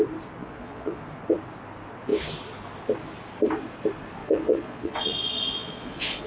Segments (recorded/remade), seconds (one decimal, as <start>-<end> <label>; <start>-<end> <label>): 0.0-0.4 recorded; 0.4-1.0 remade; 1.0-4.2 recorded; 4.2-6.3 remade